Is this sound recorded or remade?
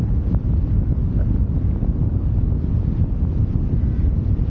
recorded